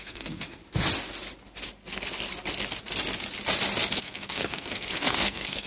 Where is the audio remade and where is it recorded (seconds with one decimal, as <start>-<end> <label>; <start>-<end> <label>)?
0.0-0.6 remade; 0.6-4.0 recorded; 4.0-5.7 remade